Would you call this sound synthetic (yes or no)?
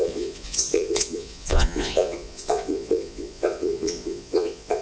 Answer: yes